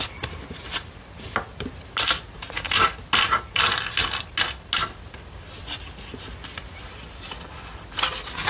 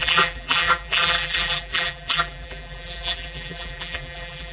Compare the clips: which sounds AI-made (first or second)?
second